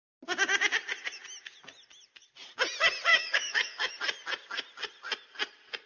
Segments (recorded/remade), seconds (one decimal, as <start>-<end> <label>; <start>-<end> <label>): 0.0-3.1 recorded; 3.1-3.9 remade; 3.9-5.9 recorded